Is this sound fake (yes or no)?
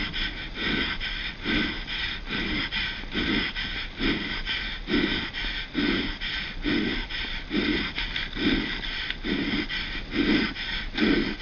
no